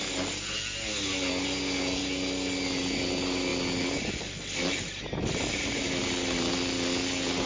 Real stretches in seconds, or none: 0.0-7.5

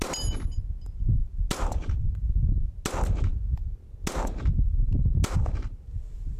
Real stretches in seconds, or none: 0.0-6.4

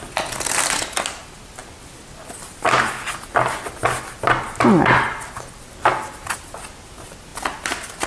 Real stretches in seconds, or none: 0.0-8.1

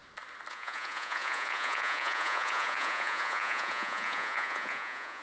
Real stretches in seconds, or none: 0.0-0.5

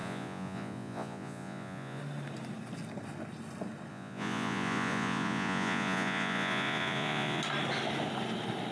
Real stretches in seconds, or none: 2.0-3.9; 7.4-8.7

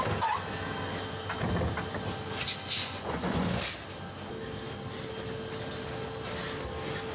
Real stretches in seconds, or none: 0.0-2.8; 3.6-7.1

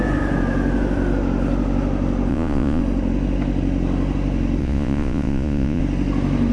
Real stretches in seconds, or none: 0.0-2.3; 2.8-4.6; 5.8-6.5

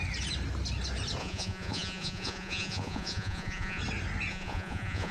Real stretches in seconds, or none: 0.0-1.2; 3.8-4.3